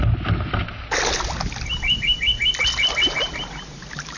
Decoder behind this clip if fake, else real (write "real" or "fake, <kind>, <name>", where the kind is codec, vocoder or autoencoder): real